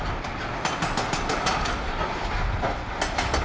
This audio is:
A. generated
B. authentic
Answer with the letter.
B